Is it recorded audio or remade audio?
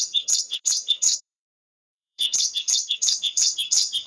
remade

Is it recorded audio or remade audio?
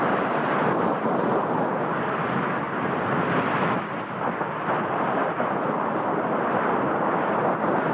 recorded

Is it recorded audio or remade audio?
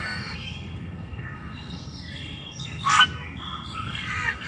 remade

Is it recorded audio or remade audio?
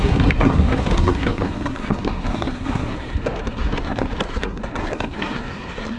remade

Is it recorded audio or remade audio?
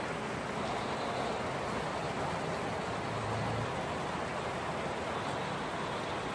recorded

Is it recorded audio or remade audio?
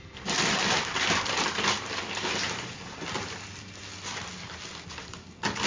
recorded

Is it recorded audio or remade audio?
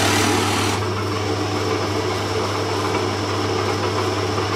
recorded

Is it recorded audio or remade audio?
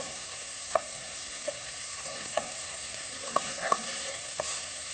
remade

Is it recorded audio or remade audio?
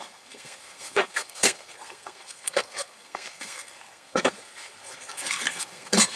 remade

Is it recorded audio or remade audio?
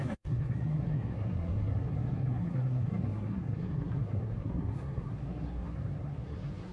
remade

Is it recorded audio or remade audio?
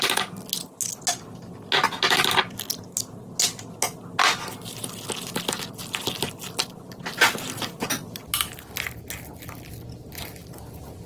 recorded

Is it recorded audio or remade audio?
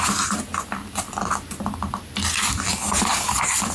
recorded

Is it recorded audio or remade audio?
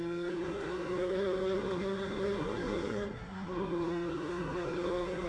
remade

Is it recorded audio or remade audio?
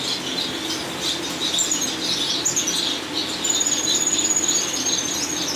recorded